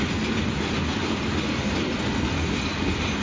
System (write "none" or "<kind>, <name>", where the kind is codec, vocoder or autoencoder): none